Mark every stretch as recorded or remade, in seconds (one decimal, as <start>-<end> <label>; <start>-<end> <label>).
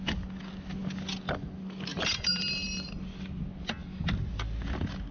0.0-1.9 recorded; 1.9-2.5 remade; 2.5-5.1 recorded